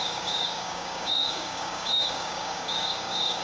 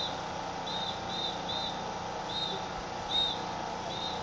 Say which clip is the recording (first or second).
second